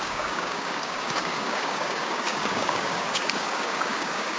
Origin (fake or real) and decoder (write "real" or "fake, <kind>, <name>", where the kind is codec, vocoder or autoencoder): fake, codec, DAC